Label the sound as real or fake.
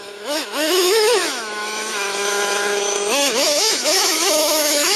fake